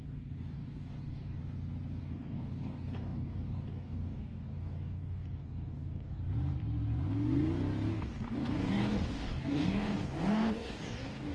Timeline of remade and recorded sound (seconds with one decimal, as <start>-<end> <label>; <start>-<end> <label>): 0.0-1.4 remade; 1.4-2.0 recorded; 2.0-6.2 remade; 6.2-7.9 recorded; 7.9-11.3 remade